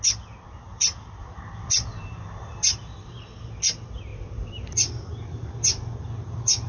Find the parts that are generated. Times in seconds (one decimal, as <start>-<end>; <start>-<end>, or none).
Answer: 0.7-3.2